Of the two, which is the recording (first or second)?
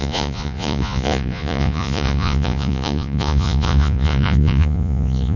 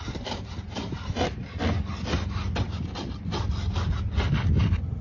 second